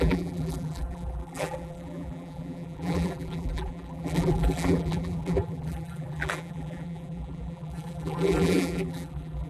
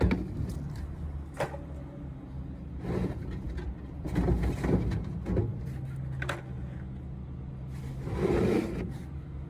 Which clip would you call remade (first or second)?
first